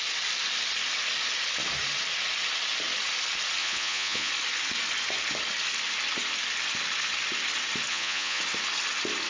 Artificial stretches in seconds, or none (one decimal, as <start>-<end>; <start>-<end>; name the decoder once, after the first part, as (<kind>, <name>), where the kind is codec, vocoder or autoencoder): 3.6-4.3 (vocoder, Vocos); 7.9-8.4

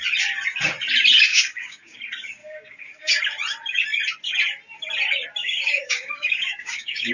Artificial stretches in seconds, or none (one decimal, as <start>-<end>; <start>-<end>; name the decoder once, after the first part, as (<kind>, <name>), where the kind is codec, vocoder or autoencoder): 1.3-2.0 (codec, DAC); 2.4-3.2; 5.4-7.1

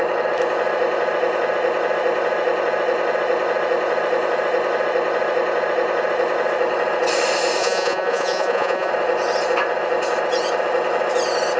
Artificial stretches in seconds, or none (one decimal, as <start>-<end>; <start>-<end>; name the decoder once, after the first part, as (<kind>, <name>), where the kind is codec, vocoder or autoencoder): 7.6-8.9 (vocoder, Vocos)